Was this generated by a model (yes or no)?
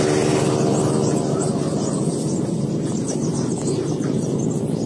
no